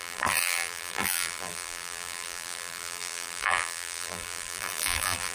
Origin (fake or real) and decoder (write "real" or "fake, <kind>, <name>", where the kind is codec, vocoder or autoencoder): fake, vocoder, BigVGAN v2